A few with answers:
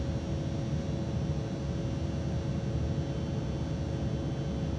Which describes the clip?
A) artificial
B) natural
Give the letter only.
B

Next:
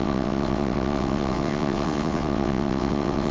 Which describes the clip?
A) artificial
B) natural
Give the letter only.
A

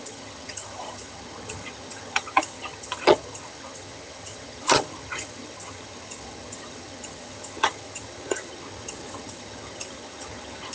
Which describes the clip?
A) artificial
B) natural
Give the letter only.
A